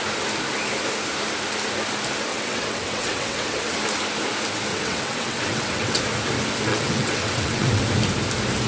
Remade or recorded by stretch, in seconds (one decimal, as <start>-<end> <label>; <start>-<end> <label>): 0.0-2.3 recorded; 2.3-3.8 remade; 3.8-4.7 recorded; 4.7-6.0 remade; 6.0-6.7 recorded; 6.7-7.8 remade; 7.8-8.7 recorded